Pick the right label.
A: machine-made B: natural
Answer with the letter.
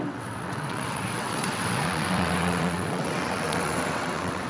A